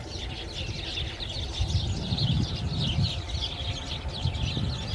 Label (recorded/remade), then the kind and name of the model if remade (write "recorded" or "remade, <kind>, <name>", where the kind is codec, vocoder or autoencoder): recorded